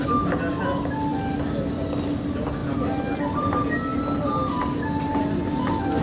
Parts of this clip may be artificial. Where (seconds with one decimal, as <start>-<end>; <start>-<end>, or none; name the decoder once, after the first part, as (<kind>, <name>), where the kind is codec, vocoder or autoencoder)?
none

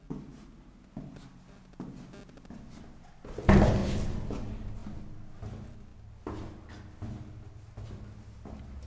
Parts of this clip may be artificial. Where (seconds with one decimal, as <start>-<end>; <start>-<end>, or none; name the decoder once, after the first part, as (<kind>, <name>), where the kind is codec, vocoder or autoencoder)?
none

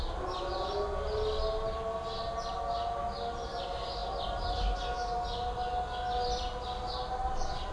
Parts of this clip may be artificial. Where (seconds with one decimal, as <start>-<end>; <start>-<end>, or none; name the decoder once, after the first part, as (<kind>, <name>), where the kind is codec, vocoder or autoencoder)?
none

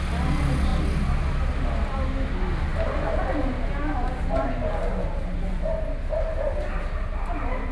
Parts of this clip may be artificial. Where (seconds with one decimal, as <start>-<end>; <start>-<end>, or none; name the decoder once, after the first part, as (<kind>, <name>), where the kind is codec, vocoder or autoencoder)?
none

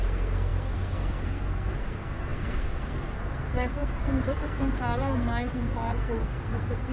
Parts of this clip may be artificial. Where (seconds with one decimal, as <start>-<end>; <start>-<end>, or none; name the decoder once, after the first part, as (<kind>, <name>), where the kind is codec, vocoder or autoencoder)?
0.0-6.9 (codec, SNAC)

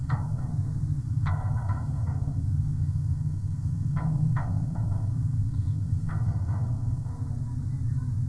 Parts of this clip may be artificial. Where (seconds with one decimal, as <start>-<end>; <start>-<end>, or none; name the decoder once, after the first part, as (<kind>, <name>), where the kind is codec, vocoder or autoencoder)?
0.0-0.5 (codec, SNAC); 1.0-7.1